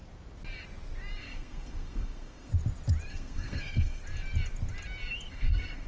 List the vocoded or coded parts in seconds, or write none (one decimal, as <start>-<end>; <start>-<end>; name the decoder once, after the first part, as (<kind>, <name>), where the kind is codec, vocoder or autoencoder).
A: 1.2-2.5 (codec, SNAC); 3.1-4.0; 5.3-5.9